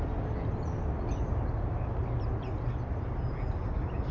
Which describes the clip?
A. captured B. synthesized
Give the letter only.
A